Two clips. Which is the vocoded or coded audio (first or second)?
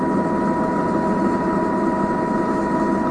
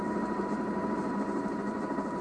second